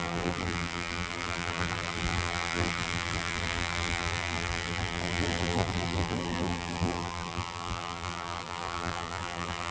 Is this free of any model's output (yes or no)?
no